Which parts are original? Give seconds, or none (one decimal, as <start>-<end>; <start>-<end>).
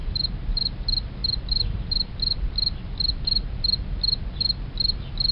0.7-1.2; 4.4-5.3